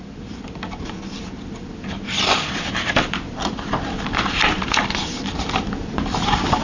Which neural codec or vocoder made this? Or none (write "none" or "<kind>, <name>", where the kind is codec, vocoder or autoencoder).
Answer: vocoder, BigVGAN v2